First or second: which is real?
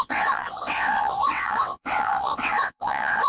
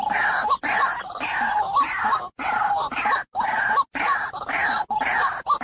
second